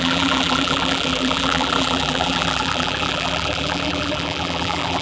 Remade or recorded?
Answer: remade